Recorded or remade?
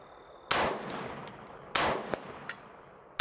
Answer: recorded